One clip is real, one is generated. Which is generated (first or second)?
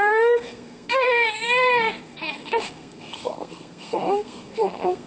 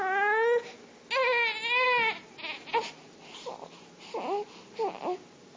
first